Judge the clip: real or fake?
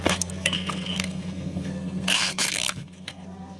fake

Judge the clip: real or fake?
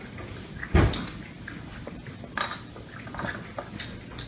real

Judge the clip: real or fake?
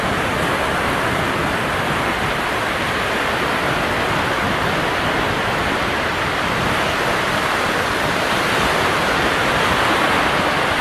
real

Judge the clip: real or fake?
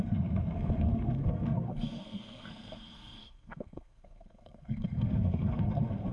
fake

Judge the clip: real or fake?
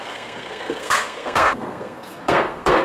fake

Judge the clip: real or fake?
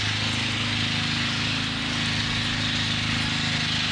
real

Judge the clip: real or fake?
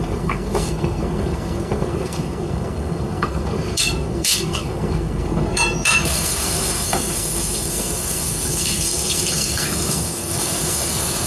fake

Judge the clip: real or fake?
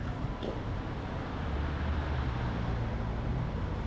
real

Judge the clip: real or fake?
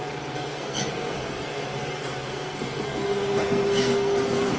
fake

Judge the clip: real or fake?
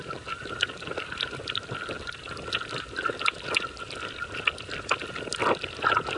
real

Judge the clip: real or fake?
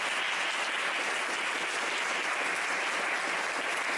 real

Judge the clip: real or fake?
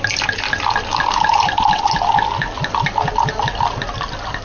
real